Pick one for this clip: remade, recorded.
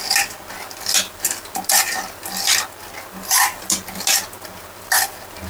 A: recorded